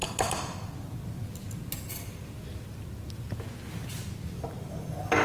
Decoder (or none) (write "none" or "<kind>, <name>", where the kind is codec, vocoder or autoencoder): none